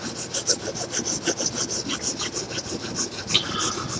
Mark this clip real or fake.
real